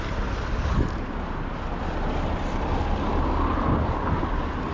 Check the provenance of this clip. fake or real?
real